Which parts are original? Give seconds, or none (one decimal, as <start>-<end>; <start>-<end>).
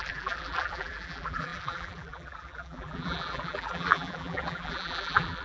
none